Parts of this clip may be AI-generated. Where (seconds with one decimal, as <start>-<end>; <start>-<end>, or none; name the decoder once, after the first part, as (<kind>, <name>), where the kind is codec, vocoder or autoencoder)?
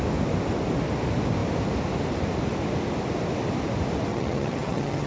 4.1-5.1 (vocoder, HiFi-GAN)